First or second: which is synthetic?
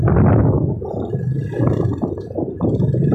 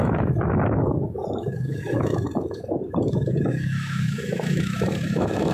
second